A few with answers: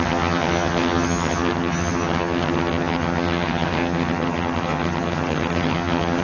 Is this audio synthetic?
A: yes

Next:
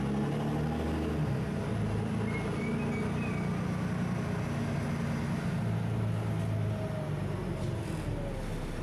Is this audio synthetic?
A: no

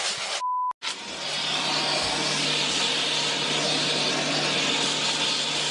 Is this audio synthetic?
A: no